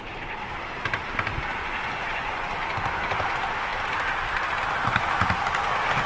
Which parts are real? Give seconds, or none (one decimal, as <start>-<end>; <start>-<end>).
0.0-1.5; 2.5-6.1